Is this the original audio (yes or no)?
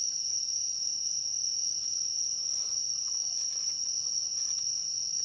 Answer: yes